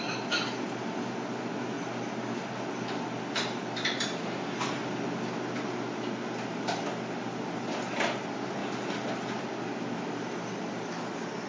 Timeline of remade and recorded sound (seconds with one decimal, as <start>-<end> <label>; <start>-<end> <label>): 0.0-11.5 recorded